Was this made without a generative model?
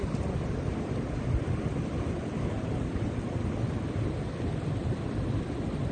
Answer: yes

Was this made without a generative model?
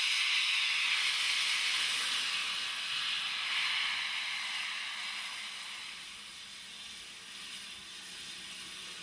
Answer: yes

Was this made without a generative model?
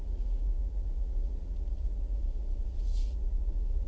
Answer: no